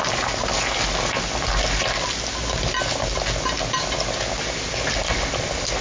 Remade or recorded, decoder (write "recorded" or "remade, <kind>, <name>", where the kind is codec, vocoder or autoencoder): recorded